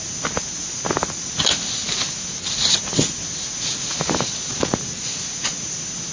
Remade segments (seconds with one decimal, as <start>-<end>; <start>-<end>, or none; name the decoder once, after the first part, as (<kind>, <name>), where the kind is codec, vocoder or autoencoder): none